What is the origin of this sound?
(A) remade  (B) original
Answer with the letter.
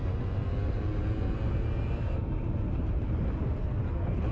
B